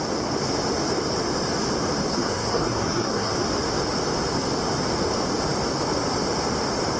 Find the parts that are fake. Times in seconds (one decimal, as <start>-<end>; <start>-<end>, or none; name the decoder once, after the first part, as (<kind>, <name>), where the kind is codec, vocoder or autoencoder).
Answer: 2.1-3.3 (codec, SNAC)